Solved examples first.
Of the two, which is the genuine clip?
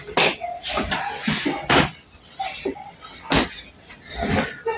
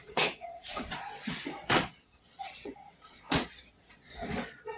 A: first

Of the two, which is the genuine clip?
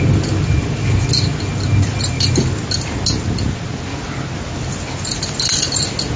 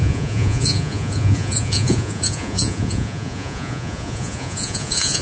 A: first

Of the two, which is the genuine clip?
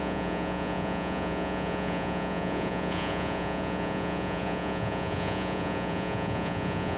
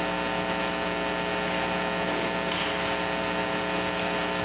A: second